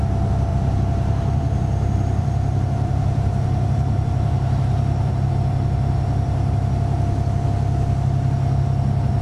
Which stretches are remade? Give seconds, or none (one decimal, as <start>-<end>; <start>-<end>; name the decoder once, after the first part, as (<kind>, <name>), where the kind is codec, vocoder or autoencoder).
0.5-5.3 (vocoder, BigVGAN v2)